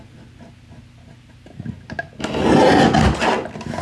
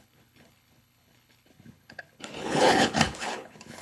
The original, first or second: first